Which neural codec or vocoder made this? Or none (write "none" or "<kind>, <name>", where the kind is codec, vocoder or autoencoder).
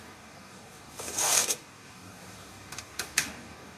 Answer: codec, DAC